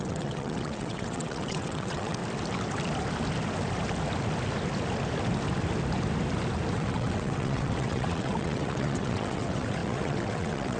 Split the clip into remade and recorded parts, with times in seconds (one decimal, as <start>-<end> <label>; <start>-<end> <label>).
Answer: 0.0-2.2 remade; 2.2-6.7 recorded; 6.7-10.8 remade

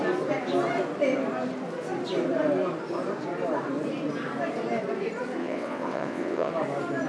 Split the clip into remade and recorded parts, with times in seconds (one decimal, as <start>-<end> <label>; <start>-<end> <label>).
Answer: 0.0-5.4 recorded; 5.4-6.5 remade; 6.5-7.1 recorded

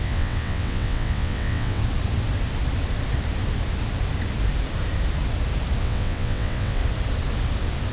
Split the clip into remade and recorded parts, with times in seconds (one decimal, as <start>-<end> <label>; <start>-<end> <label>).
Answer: 0.0-1.8 remade; 1.8-5.8 recorded; 5.8-6.8 remade; 6.8-7.9 recorded

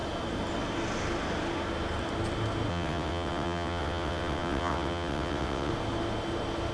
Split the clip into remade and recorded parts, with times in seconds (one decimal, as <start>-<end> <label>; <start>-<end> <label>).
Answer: 0.0-2.7 recorded; 2.7-5.7 remade; 5.7-6.7 recorded

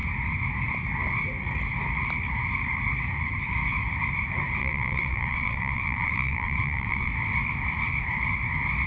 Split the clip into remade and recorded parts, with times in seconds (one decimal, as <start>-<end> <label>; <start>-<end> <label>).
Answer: 0.0-4.6 recorded; 4.6-7.1 remade; 7.1-8.9 recorded

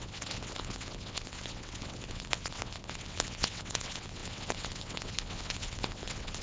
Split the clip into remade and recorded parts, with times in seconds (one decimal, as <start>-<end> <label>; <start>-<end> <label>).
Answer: 0.0-6.4 remade